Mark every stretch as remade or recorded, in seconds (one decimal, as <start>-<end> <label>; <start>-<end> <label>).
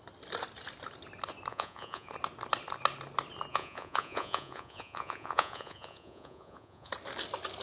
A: 0.0-1.5 recorded; 1.5-2.1 remade; 2.1-3.5 recorded; 3.5-6.9 remade; 6.9-7.6 recorded